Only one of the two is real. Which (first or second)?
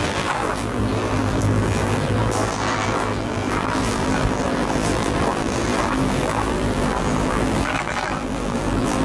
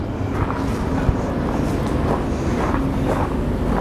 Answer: second